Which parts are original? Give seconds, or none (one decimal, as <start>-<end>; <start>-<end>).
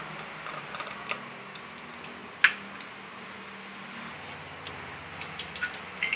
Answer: 0.0-6.2